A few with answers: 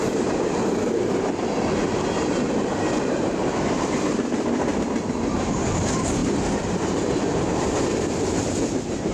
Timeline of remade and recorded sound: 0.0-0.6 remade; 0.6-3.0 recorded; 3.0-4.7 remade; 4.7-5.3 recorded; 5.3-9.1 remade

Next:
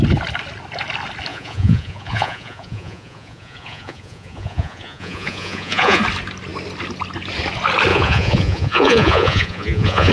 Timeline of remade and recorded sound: 0.0-1.3 recorded; 1.3-6.0 remade; 6.0-7.9 recorded; 7.9-10.1 remade

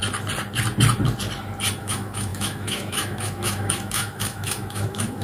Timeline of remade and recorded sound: 0.0-1.8 recorded; 1.8-5.2 remade